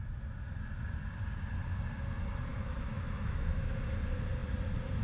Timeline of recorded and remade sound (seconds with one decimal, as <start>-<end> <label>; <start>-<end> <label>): 0.0-2.5 recorded; 2.5-3.7 remade; 3.7-5.0 recorded